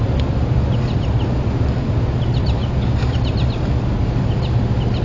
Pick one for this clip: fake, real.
real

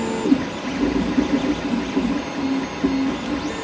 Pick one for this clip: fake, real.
real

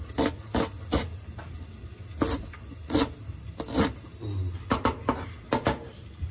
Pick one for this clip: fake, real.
real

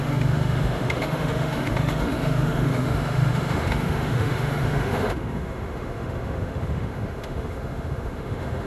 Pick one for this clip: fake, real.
fake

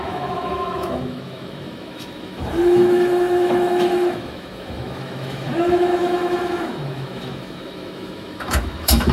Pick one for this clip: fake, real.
fake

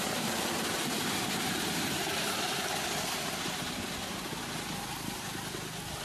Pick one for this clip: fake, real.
real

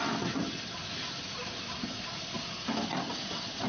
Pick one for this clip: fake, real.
real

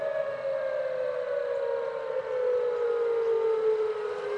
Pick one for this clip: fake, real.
real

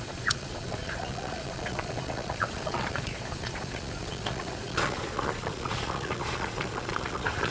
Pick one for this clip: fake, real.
fake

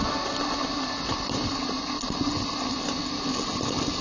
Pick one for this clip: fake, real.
real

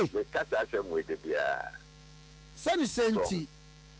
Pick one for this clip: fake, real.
fake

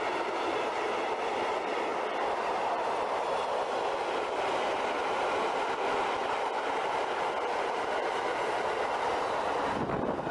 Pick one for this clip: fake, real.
real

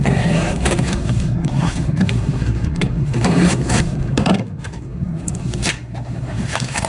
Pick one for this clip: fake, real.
fake